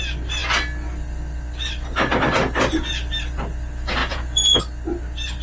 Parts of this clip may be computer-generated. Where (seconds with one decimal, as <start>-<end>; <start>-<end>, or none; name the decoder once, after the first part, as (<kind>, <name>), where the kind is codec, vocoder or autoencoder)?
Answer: 4.0-4.6 (vocoder, Vocos)